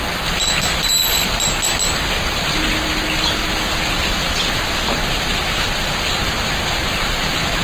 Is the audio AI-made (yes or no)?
no